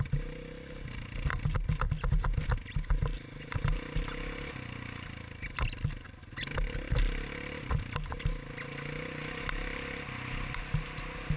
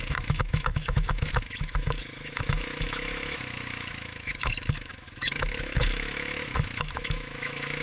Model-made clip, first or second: second